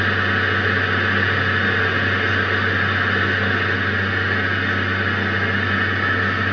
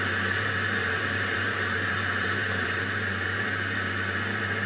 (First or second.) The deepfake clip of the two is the second